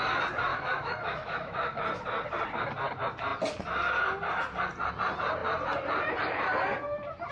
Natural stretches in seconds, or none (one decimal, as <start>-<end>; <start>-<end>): 0.0-0.5; 1.8-7.3